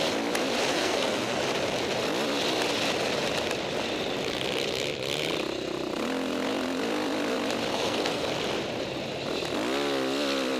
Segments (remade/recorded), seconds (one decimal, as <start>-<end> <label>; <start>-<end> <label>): 0.0-0.7 recorded; 0.7-1.4 remade; 1.4-7.7 recorded; 7.7-8.3 remade; 8.3-10.6 recorded